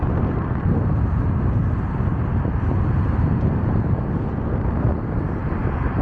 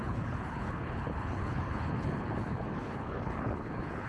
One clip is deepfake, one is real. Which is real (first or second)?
first